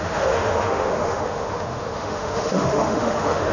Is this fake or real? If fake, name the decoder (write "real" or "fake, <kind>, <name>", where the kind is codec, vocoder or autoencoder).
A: fake, autoencoder, DAC-VAE